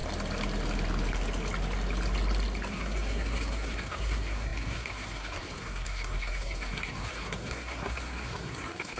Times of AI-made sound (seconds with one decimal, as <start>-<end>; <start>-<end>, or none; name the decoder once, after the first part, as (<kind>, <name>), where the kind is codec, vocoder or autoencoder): 2.7-9.0 (codec, SNAC)